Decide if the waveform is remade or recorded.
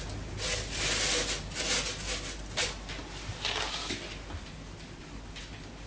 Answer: recorded